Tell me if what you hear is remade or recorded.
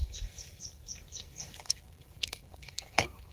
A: remade